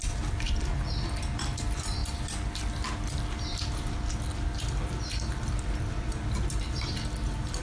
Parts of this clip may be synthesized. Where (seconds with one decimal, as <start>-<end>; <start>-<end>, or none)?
none